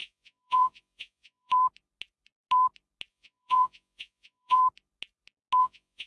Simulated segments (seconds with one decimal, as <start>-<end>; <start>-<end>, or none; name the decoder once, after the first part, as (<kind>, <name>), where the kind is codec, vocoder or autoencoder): 0.0-1.5 (vocoder, Vocos); 3.1-4.6; 5.6-6.1